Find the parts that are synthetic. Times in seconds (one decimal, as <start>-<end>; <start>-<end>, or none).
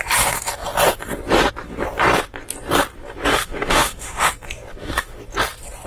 3.3-4.3; 4.7-5.2